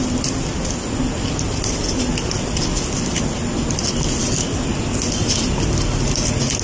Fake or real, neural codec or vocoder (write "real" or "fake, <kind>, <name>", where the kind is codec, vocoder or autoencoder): real